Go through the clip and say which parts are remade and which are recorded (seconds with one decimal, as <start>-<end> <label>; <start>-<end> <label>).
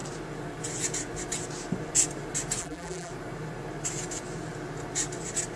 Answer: 0.0-2.6 recorded; 2.6-3.1 remade; 3.1-5.6 recorded